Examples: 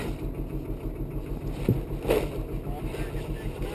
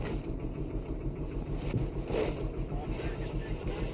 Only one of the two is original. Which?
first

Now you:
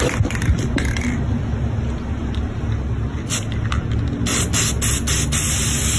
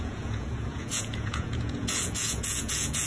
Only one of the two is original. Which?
first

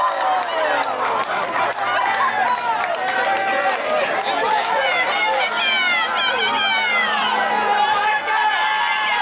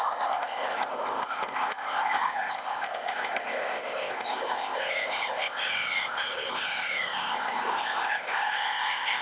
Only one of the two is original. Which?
first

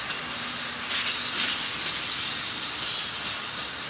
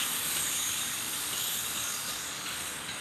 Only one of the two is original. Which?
first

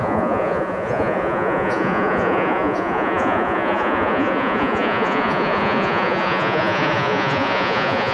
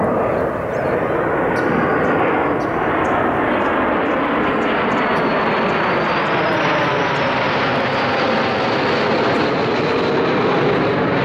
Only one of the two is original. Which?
second